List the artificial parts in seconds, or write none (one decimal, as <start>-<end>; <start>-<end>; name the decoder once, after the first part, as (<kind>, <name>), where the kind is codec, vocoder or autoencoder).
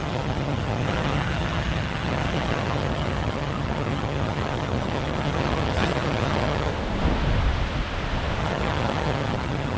0.0-6.7 (vocoder, HiFi-GAN); 8.4-9.8